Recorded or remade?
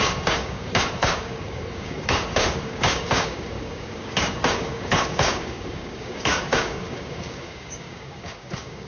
remade